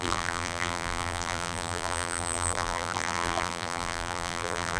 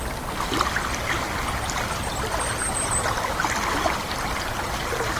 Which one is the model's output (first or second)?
first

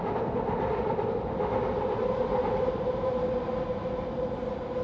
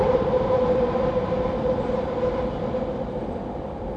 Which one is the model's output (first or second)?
second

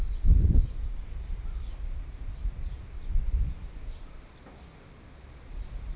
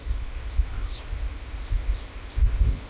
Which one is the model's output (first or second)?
second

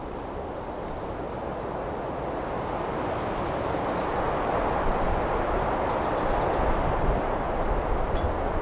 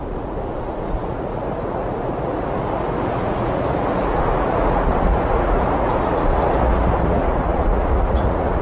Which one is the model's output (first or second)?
second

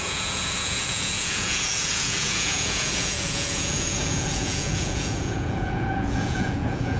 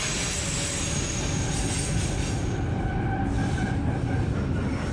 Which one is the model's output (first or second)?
first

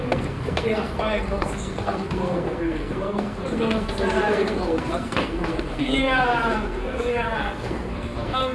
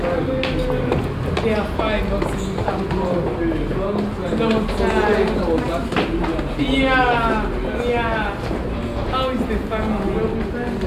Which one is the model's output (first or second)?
first